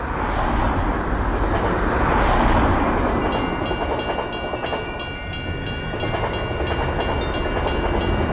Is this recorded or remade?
recorded